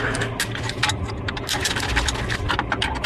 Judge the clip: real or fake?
real